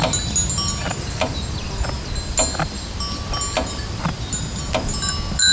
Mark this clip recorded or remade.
recorded